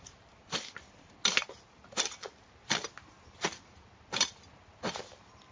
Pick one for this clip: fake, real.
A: real